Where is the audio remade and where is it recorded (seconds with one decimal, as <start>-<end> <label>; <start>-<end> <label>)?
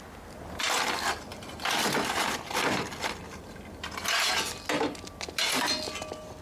0.0-6.4 recorded